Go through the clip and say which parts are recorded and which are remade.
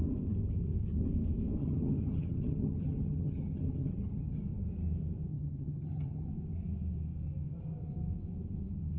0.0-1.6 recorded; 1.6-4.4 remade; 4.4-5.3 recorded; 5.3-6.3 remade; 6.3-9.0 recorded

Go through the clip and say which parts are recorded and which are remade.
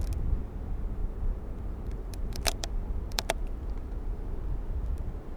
0.0-1.0 recorded; 1.0-4.2 remade; 4.2-5.4 recorded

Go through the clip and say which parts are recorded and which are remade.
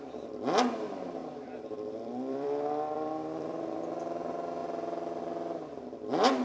0.0-1.2 recorded; 1.2-3.8 remade; 3.8-4.6 recorded; 4.6-5.2 remade; 5.2-6.4 recorded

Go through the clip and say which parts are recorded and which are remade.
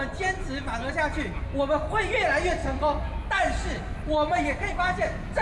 0.0-1.1 recorded; 1.1-1.6 remade; 1.6-2.6 recorded; 2.6-4.7 remade; 4.7-5.4 recorded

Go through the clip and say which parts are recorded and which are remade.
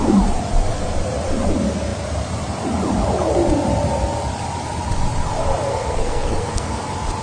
0.0-5.7 recorded; 5.7-6.8 remade; 6.8-7.2 recorded